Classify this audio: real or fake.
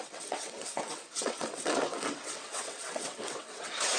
fake